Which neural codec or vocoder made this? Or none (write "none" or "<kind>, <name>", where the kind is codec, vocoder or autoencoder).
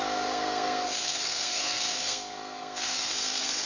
codec, SNAC